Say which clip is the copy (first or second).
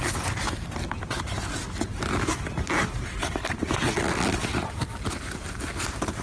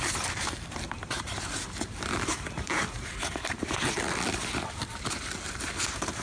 second